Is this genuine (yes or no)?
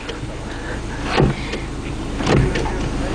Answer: yes